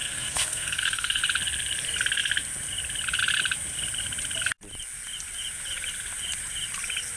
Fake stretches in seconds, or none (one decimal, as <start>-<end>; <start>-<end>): 0.0-1.2